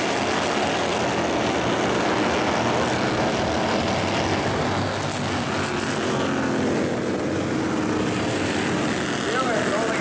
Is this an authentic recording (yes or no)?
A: yes